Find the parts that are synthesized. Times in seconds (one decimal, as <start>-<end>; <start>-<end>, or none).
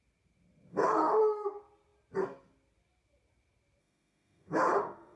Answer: 0.7-1.2; 3.8-5.2